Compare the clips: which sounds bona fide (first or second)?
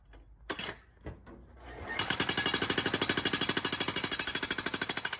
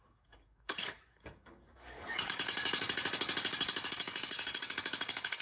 first